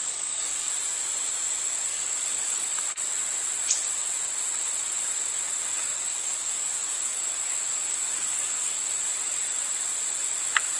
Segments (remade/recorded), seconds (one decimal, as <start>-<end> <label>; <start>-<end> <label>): 0.0-0.7 remade; 0.7-1.9 recorded; 1.9-2.8 remade; 2.8-5.7 recorded; 5.7-9.1 remade; 9.1-10.8 recorded